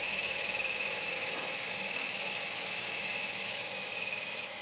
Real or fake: fake